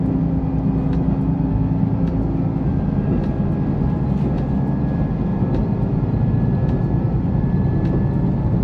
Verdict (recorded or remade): recorded